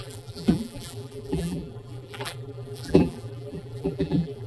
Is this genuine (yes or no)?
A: no